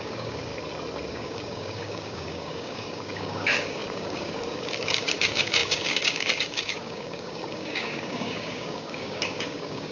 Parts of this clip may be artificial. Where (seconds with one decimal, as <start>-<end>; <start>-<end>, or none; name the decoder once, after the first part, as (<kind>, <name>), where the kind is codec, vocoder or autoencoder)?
0.0-0.5 (codec, DAC); 1.1-9.9